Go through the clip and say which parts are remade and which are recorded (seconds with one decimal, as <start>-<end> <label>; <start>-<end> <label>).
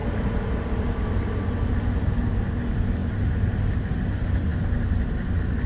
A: 0.0-5.7 recorded